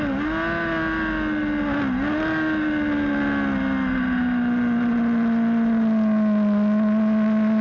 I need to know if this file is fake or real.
real